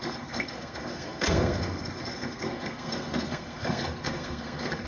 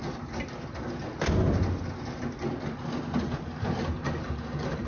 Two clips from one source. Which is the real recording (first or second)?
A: second